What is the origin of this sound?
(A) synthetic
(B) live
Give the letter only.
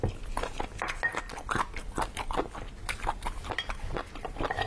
B